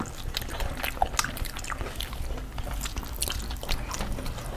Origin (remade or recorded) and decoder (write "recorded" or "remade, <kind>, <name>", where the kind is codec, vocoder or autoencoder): recorded